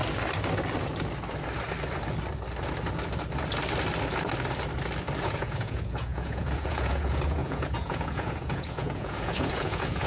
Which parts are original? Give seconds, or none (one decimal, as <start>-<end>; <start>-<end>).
0.0-5.2